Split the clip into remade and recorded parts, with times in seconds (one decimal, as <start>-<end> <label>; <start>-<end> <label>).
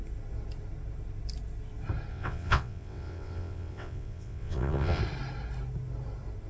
0.0-2.1 recorded; 2.1-5.0 remade; 5.0-6.5 recorded